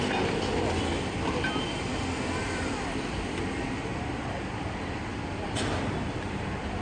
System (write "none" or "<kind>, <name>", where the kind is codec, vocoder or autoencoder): vocoder, BigVGAN v2